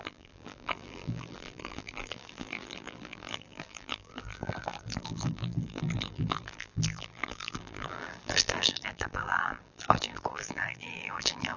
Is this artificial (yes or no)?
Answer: yes